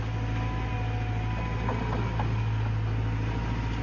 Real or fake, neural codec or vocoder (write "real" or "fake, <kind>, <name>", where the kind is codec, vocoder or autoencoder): real